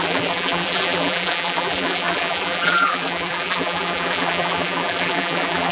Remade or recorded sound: remade